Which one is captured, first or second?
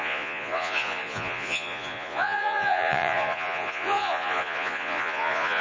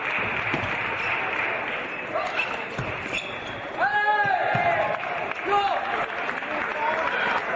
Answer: second